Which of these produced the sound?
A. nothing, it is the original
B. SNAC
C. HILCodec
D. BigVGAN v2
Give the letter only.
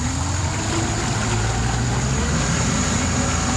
A